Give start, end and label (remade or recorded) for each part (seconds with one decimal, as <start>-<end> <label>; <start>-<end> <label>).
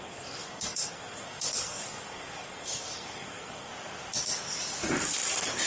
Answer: 0.0-3.7 remade; 3.7-5.7 recorded